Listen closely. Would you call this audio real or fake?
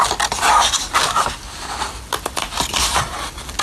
real